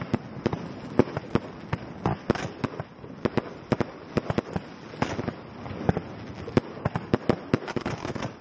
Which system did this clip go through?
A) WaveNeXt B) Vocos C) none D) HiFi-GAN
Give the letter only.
C